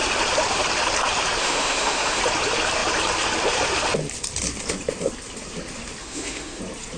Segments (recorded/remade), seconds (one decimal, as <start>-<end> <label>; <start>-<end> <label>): 0.0-1.4 recorded; 1.4-2.2 remade; 2.2-6.0 recorded; 6.0-6.6 remade; 6.6-7.0 recorded